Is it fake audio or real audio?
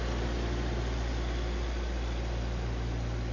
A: real